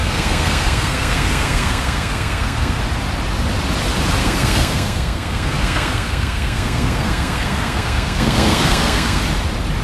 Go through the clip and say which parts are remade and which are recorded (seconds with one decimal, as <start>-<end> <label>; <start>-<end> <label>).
0.0-2.8 remade; 2.8-4.2 recorded; 4.2-9.2 remade; 9.2-9.8 recorded